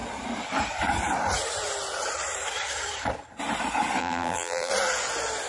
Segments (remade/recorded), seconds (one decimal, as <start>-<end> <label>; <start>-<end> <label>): 0.0-4.0 recorded; 4.0-4.7 remade; 4.7-5.5 recorded